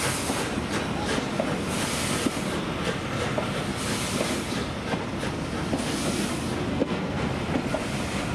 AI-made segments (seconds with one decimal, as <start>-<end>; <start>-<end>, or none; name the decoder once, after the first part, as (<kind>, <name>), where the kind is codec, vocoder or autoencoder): 6.7-7.3 (codec, SNAC)